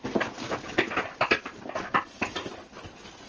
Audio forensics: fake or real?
real